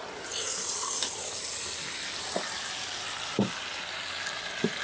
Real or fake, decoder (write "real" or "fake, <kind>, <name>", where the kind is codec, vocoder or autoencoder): real